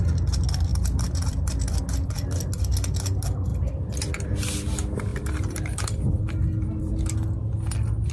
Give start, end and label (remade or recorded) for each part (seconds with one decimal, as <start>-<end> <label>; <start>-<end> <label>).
0.0-0.7 recorded; 0.7-1.8 remade; 1.8-3.5 recorded; 3.5-4.1 remade; 4.1-5.1 recorded; 5.1-6.9 remade; 6.9-8.1 recorded

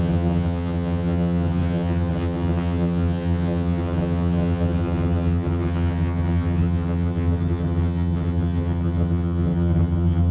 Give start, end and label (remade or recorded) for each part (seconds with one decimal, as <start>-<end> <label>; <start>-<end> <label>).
0.0-10.3 remade

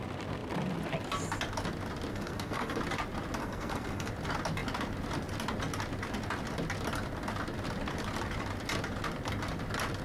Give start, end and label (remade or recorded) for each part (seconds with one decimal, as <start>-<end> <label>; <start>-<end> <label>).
0.0-2.1 recorded; 2.1-2.8 remade; 2.8-3.4 recorded; 3.4-4.1 remade; 4.1-10.0 recorded